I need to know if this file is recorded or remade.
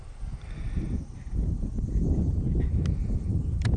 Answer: recorded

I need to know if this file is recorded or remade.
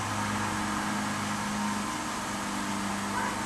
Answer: recorded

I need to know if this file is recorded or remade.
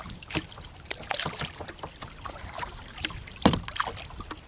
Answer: recorded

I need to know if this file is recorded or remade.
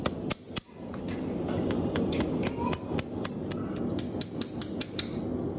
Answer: recorded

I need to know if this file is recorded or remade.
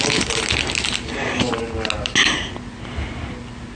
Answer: recorded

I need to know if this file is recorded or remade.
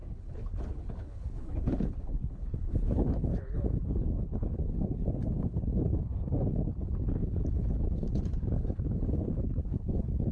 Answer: remade